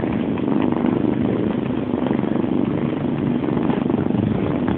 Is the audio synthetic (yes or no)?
no